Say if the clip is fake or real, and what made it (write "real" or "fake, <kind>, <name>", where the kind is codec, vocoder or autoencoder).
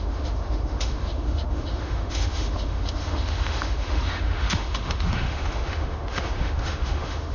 fake, autoencoder, DAC-VAE